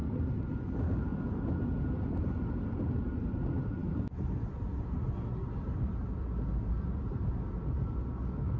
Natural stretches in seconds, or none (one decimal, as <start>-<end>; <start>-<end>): 0.0-8.6